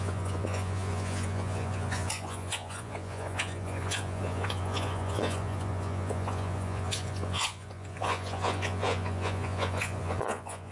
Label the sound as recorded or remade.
remade